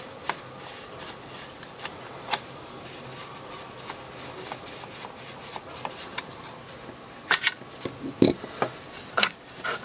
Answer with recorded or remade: recorded